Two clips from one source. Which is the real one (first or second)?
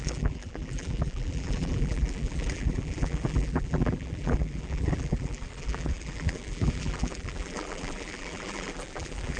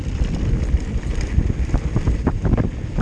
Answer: second